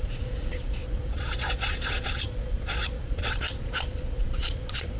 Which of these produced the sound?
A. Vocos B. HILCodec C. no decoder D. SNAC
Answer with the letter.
A